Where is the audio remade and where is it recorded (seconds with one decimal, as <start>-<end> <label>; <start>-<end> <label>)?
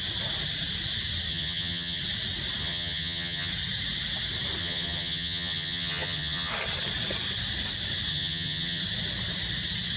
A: 0.0-1.3 recorded; 1.3-2.0 remade; 2.0-2.6 recorded; 2.6-3.5 remade; 3.5-4.6 recorded; 4.6-6.5 remade; 6.5-8.1 recorded; 8.1-8.8 remade; 8.8-10.0 recorded